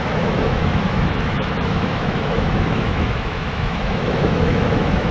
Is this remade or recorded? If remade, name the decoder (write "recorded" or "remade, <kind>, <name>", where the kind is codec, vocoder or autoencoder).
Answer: remade, autoencoder, DAC-VAE